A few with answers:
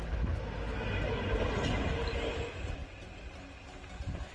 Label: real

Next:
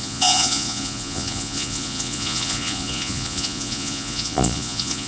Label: fake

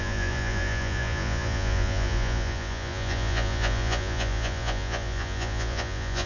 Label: fake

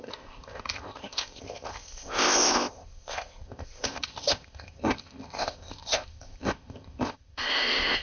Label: fake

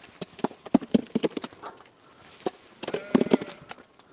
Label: real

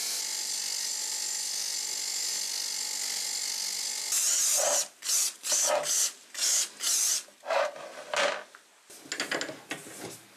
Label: real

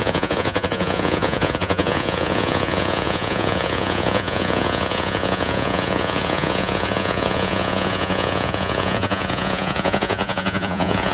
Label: fake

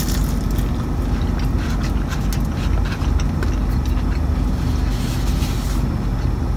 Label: real